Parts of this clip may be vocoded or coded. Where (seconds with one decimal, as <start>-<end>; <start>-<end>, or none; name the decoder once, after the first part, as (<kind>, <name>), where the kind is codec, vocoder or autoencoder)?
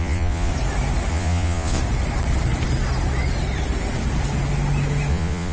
0.0-0.5 (vocoder, Vocos); 1.1-1.8; 5.1-5.5